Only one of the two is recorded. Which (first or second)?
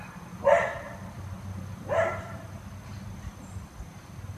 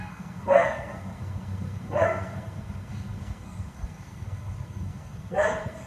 first